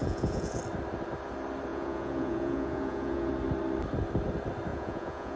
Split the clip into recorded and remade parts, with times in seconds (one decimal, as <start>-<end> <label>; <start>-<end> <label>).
0.0-0.6 remade; 0.6-1.7 recorded; 1.7-3.3 remade; 3.3-4.7 recorded; 4.7-5.4 remade